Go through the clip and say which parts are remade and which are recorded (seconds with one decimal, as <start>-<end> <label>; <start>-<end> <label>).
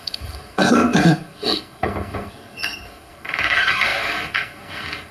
0.0-5.1 remade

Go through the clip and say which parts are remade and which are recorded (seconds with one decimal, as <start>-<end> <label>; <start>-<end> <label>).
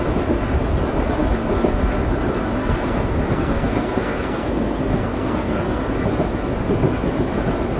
0.0-2.6 recorded; 2.6-5.8 remade; 5.8-7.8 recorded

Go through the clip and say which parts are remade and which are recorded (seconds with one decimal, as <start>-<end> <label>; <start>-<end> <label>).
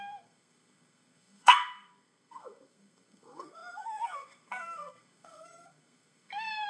0.0-6.7 remade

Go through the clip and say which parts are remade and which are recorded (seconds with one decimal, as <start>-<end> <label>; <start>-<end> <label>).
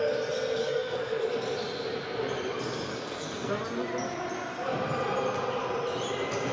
0.0-0.6 recorded; 0.6-1.2 remade; 1.2-2.9 recorded; 2.9-3.5 remade; 3.5-6.5 recorded